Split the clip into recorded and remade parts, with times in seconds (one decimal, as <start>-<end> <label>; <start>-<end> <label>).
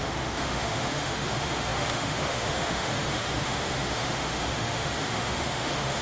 0.0-6.0 remade